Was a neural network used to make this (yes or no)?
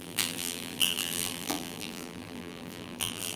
yes